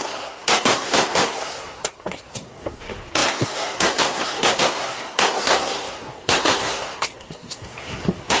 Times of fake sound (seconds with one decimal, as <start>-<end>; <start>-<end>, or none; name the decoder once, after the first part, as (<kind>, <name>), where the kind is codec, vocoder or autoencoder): 0.0-8.4 (codec, SNAC)